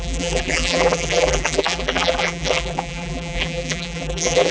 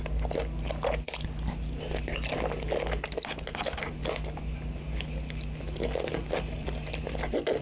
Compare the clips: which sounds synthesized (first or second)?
first